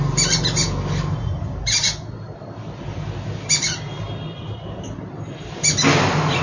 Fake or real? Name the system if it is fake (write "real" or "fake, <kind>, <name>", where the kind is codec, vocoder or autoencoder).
real